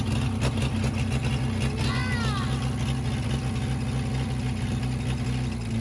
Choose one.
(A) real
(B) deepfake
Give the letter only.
A